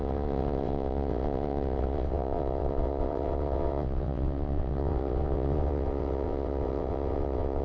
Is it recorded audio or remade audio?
remade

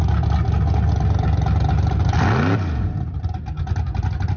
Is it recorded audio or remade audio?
recorded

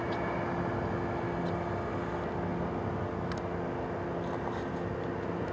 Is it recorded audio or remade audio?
recorded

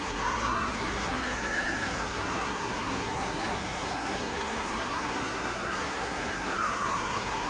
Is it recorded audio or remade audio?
remade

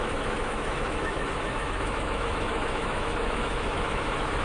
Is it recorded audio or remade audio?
remade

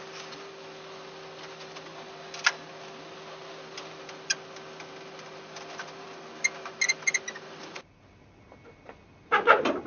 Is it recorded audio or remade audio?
recorded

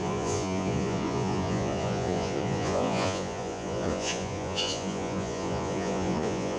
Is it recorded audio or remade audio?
remade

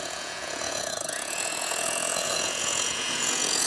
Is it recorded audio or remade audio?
remade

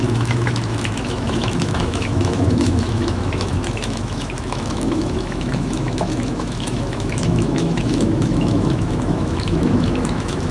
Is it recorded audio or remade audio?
remade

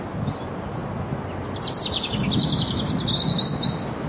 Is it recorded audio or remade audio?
recorded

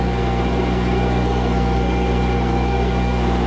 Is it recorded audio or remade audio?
remade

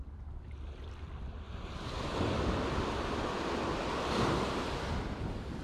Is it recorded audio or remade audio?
recorded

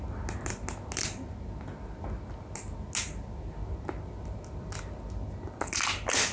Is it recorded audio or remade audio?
recorded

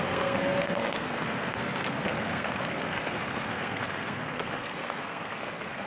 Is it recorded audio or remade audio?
remade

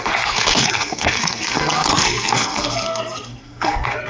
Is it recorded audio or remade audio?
remade